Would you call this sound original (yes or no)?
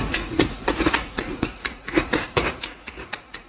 no